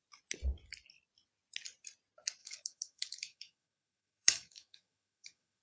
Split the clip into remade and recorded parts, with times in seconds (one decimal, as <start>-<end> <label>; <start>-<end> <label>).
0.0-2.4 recorded; 2.4-5.6 remade